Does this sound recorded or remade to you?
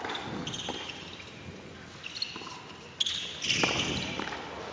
recorded